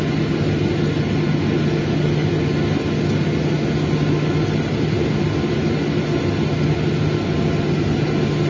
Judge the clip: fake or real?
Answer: real